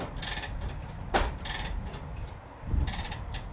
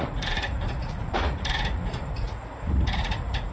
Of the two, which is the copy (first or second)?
second